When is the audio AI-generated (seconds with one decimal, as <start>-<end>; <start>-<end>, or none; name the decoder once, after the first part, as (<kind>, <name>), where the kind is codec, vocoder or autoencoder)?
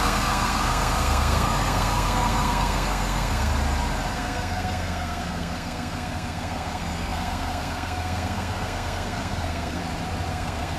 0.0-3.5 (codec, SNAC); 4.1-9.8; 10.3-10.8